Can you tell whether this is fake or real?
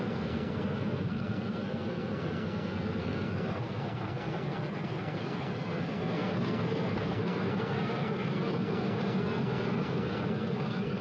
fake